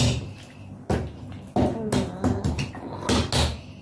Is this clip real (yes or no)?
yes